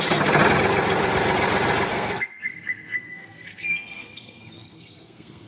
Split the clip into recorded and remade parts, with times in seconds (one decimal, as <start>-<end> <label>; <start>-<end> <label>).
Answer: 0.0-1.9 recorded; 1.9-5.5 remade